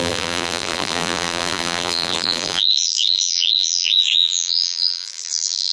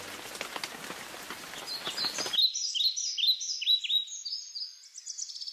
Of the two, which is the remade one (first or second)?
first